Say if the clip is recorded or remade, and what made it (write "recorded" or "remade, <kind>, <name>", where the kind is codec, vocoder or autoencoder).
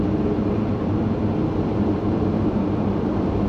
remade, vocoder, BigVGAN v2